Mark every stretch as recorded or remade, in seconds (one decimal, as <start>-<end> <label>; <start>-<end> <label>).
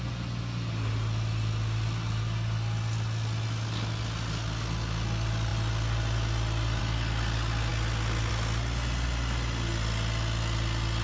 0.0-11.0 recorded